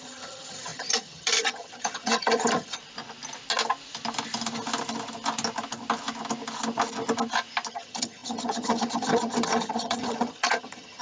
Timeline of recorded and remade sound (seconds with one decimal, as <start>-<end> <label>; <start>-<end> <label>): 0.0-2.8 remade; 2.8-7.7 recorded; 7.7-11.0 remade